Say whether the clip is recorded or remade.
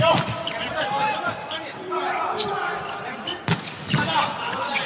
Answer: recorded